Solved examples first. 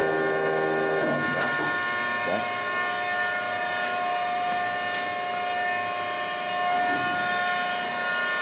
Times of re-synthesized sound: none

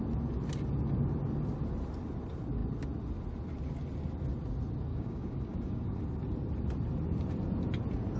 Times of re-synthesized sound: 4.9-6.0 (codec, DAC)

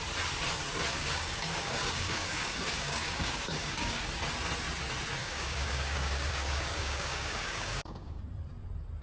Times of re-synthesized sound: 0.9-4.0 (codec, DAC); 5.2-8.2

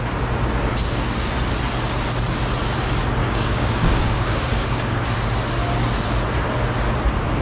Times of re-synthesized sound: 0.7-1.3 (codec, DAC); 3.2-5.1

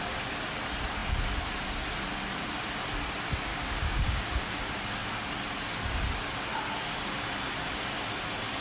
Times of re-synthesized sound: 3.5-4.6 (codec, DAC)

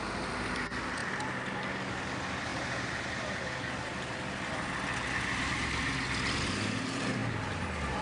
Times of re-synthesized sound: none